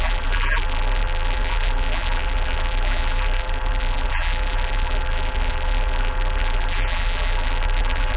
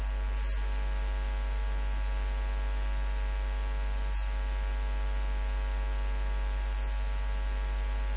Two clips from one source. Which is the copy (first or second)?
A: first